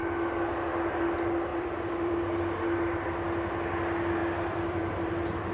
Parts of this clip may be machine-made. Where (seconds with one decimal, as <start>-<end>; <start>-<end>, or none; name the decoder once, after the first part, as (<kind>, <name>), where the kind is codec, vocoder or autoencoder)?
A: 1.5-2.4 (vocoder, BigVGAN v2); 4.2-5.1